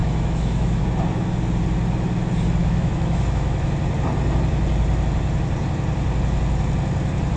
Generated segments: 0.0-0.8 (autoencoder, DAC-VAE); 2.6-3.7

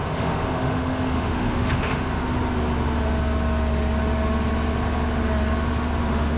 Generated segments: 0.0-2.2 (autoencoder, DAC-VAE); 6.0-6.4

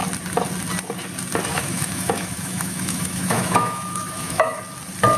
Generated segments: 1.5-4.6 (autoencoder, DAC-VAE)

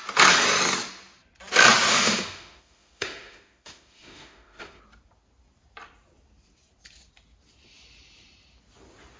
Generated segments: 1.9-4.8 (autoencoder, DAC-VAE)

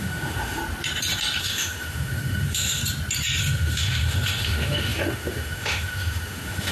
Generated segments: 0.0-0.6 (autoencoder, DAC-VAE); 1.4-2.8; 3.4-6.7

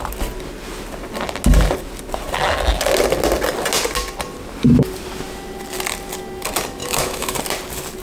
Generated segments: 6.8-7.4 (autoencoder, DAC-VAE)

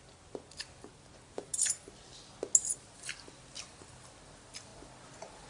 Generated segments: none